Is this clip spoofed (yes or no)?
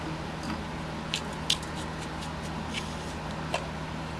no